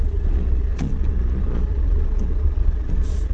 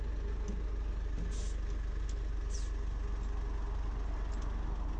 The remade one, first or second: first